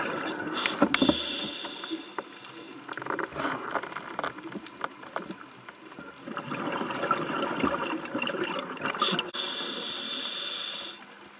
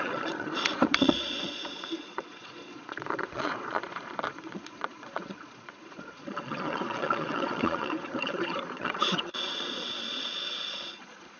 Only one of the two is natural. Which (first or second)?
first